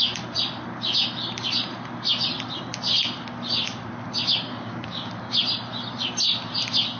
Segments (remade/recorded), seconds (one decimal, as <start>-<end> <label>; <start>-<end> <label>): 0.0-4.5 recorded; 4.5-5.1 remade; 5.1-7.0 recorded